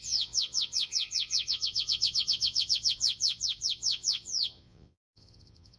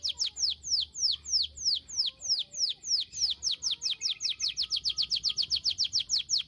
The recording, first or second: second